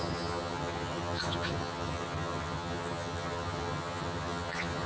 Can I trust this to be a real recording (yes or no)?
no